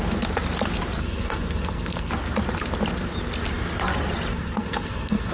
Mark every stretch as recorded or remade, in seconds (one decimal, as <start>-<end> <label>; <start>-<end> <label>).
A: 0.0-1.0 recorded; 1.0-2.1 remade; 2.1-4.3 recorded; 4.3-5.3 remade